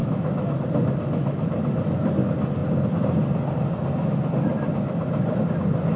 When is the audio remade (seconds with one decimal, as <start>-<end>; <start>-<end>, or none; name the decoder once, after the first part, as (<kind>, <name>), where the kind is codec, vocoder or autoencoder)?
0.0-0.5 (autoencoder, DAC-VAE)